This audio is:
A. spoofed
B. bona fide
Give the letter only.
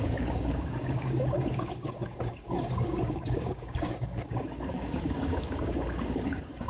A